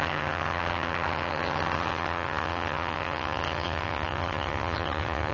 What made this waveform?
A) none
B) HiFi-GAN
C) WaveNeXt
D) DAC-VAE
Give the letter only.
B